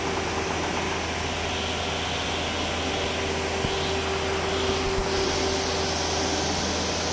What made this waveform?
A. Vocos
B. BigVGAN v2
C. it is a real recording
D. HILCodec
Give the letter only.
C